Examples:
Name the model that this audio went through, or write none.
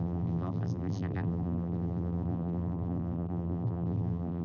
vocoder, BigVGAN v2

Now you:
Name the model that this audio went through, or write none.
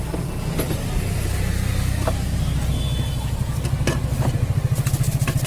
none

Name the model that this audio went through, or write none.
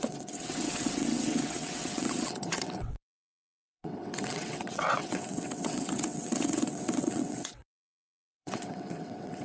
vocoder, WaveNeXt